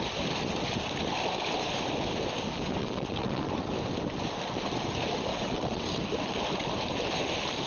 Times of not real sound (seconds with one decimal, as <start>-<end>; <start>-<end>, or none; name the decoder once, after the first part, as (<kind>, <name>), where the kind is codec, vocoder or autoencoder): 2.8-3.5 (vocoder, WaveNeXt); 5.3-6.0